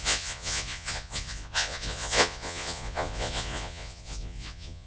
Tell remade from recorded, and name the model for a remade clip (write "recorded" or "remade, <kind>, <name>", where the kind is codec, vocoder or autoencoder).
remade, vocoder, Vocos